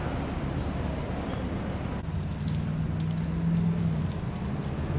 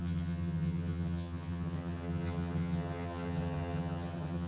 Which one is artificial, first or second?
second